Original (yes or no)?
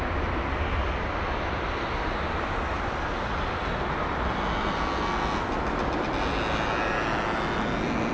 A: yes